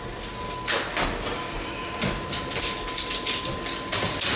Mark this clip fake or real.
real